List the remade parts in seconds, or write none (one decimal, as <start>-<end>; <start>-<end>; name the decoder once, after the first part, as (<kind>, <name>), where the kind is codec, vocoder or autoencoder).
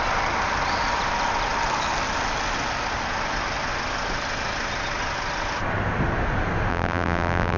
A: 6.7-7.6 (vocoder, BigVGAN v2)